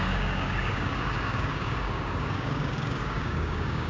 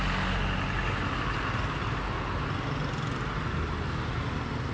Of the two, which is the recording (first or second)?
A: second